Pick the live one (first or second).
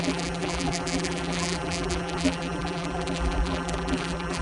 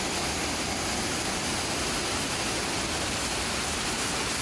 second